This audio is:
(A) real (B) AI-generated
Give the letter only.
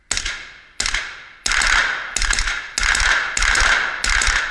A